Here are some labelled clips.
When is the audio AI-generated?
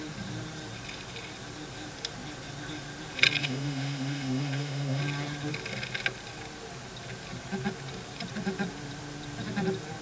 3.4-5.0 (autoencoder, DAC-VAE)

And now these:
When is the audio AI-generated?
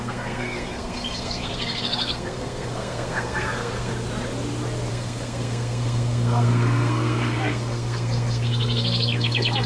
0.0-3.9 (codec, SNAC); 4.9-9.7